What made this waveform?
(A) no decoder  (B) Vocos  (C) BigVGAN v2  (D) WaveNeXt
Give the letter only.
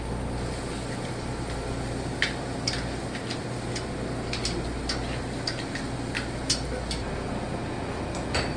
A